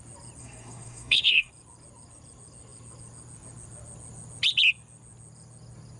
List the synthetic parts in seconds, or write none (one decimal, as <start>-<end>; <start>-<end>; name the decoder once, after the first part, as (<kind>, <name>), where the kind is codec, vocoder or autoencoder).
0.4-1.5 (codec, SNAC)